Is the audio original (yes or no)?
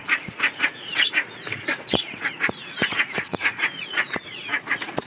no